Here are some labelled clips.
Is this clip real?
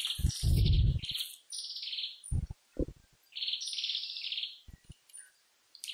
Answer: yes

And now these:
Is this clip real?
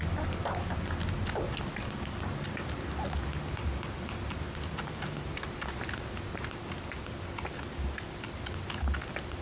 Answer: yes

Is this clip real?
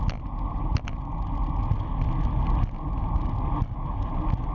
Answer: yes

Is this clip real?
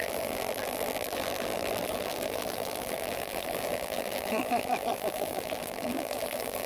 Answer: no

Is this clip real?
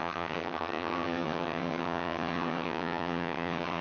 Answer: no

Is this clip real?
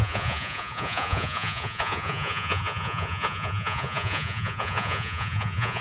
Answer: no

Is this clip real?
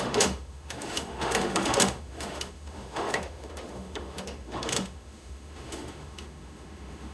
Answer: no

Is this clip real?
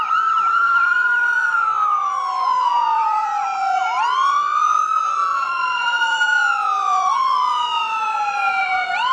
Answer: no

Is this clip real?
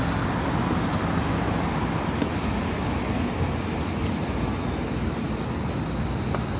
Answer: yes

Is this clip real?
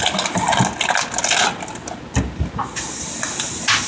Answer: yes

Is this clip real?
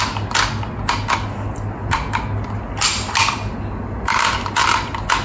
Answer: yes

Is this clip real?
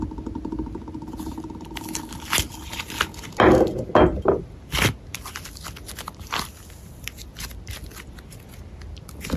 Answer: yes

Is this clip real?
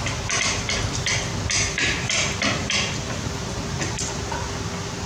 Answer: yes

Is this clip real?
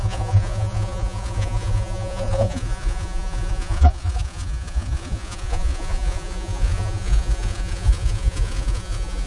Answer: no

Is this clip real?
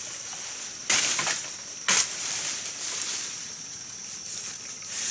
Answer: yes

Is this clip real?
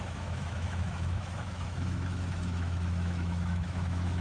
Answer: no